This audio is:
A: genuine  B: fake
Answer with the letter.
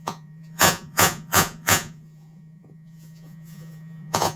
B